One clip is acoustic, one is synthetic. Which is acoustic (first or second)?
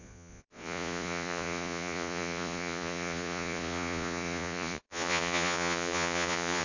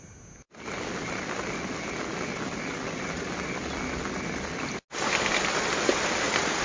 second